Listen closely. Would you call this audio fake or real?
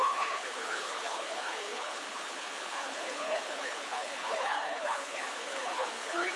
fake